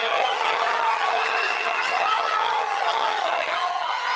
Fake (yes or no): yes